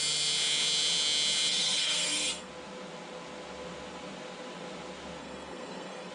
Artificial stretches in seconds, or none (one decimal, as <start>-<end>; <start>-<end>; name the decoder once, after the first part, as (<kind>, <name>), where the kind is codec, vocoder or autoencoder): 1.5-2.5 (codec, SNAC); 5.2-6.1